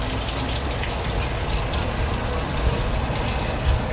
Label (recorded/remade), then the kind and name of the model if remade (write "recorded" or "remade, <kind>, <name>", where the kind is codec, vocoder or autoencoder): recorded